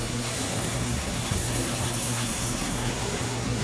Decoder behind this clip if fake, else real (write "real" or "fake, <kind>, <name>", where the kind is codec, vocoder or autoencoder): fake, codec, SNAC